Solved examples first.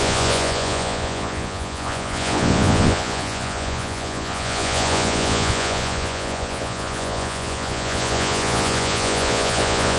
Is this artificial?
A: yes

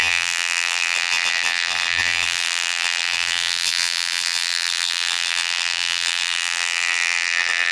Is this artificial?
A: yes